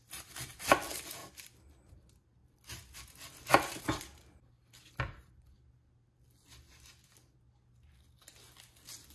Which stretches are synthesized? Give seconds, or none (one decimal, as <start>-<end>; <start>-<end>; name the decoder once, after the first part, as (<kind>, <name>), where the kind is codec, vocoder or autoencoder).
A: none